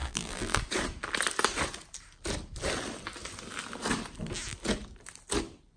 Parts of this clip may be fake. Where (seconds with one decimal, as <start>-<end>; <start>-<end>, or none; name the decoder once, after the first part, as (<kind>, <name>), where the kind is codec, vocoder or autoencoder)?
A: 0.0-0.6 (vocoder, BigVGAN v2)